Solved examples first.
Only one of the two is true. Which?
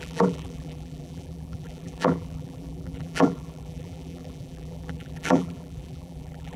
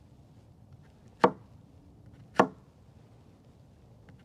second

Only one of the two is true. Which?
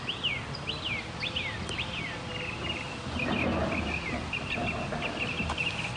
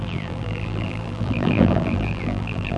first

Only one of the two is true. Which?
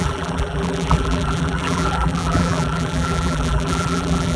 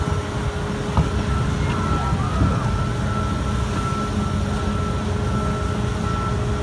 second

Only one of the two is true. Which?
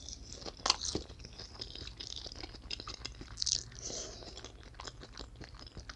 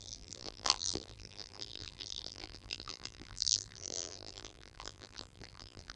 first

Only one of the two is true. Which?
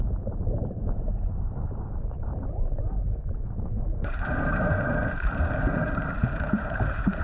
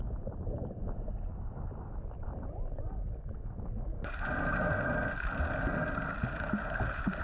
second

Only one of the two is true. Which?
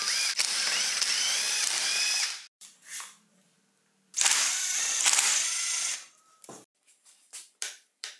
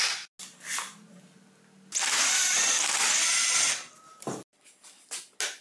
second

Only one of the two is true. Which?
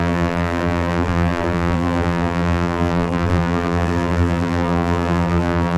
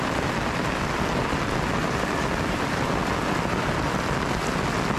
second